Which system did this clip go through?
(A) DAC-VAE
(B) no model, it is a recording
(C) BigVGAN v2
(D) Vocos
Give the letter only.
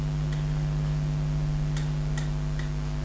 B